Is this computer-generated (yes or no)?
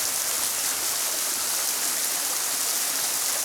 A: no